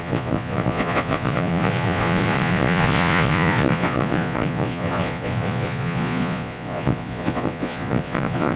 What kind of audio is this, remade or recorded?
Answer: remade